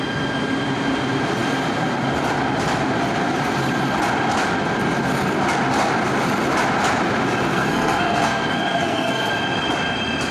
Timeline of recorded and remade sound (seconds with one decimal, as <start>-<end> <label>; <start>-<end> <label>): 0.0-7.5 recorded; 7.5-9.3 remade; 9.3-10.3 recorded